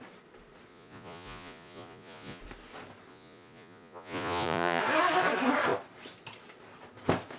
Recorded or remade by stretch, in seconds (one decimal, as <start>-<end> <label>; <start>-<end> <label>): 0.0-0.7 recorded; 0.7-2.4 remade; 2.4-3.1 recorded; 3.1-4.8 remade; 4.8-7.4 recorded